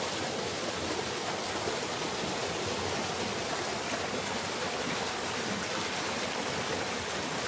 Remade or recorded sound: recorded